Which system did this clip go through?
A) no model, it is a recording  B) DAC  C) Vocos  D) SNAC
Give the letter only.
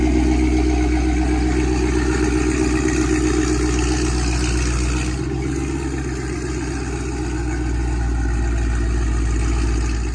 A